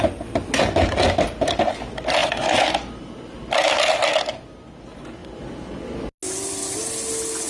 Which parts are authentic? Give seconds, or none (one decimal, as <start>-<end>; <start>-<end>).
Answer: 0.0-7.5